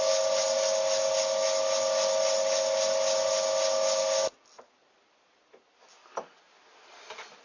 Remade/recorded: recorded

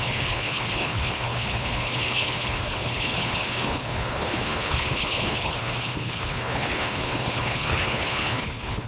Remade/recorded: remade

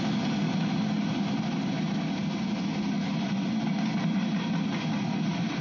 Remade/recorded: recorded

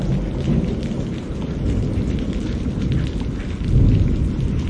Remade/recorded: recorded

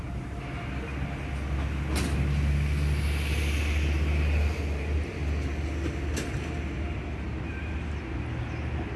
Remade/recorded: recorded